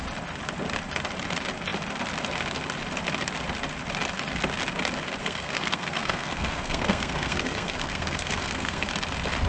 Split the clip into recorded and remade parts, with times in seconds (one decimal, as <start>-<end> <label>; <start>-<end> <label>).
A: 0.0-5.2 recorded; 5.2-8.9 remade; 8.9-9.5 recorded